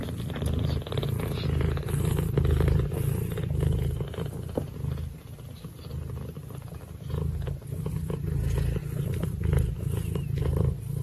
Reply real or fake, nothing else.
real